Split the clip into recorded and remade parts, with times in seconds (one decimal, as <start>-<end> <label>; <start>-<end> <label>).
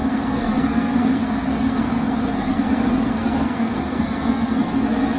0.0-5.2 remade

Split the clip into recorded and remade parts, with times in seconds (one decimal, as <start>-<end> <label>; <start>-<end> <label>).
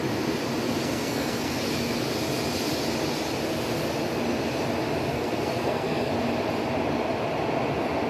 0.0-0.8 recorded; 0.8-1.6 remade; 1.6-5.1 recorded; 5.1-6.1 remade; 6.1-8.1 recorded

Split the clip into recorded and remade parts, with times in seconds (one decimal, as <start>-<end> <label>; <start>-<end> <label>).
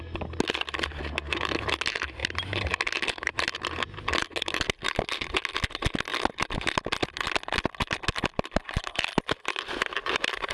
0.0-10.5 recorded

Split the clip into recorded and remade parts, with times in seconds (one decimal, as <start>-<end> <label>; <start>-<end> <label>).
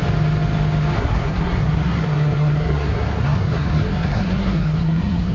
0.0-1.0 recorded; 1.0-5.3 remade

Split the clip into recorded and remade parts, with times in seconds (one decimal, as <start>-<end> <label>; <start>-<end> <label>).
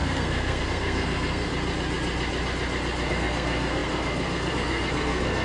0.0-1.5 remade; 1.5-3.1 recorded; 3.1-5.4 remade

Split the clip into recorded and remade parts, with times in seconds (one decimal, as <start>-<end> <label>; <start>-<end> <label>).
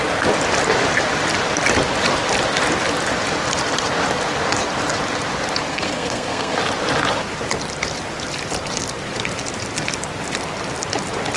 0.0-5.7 recorded; 5.7-6.6 remade; 6.6-11.4 recorded